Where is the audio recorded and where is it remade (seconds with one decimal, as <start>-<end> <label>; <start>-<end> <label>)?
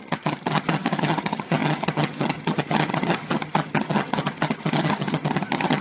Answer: 0.0-5.8 remade